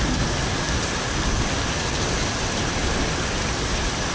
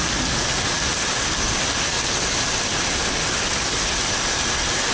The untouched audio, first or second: second